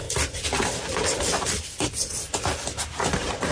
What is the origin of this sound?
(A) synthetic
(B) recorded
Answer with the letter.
A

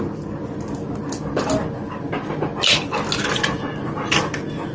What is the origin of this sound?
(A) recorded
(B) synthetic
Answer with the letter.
A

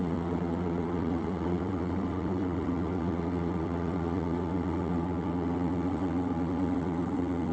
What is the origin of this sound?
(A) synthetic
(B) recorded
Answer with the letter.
A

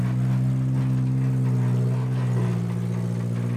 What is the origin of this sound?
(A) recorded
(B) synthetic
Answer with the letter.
A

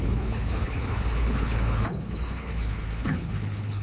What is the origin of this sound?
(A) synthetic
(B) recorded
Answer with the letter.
A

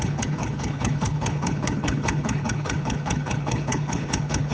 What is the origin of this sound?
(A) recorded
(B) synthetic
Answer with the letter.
B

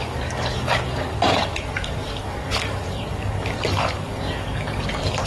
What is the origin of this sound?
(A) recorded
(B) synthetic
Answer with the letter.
B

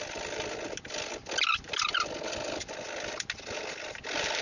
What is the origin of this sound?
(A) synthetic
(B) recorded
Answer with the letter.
B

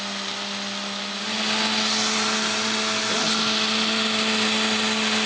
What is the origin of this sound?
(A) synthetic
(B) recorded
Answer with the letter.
B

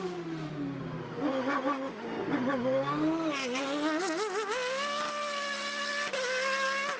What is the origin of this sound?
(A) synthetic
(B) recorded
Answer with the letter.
B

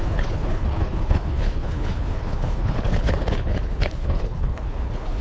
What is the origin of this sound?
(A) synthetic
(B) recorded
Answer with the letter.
A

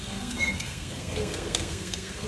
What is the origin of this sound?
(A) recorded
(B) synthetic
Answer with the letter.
B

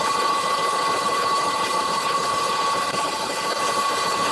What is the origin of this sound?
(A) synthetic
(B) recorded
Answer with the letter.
A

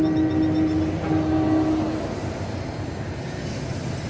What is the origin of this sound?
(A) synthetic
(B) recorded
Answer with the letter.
B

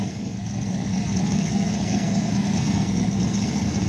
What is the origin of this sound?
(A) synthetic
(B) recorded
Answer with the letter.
A